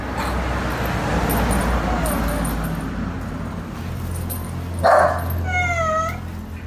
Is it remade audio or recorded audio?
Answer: recorded